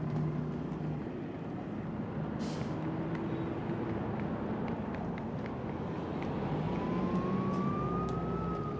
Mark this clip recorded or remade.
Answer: recorded